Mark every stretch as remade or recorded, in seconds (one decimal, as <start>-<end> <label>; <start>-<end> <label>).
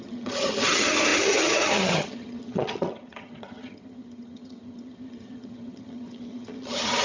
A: 0.0-7.0 remade